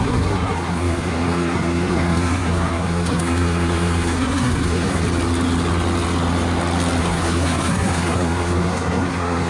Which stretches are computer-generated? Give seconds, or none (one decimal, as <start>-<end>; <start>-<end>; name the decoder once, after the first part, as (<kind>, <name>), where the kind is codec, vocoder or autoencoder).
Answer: 0.0-5.0 (codec, SNAC); 7.0-9.5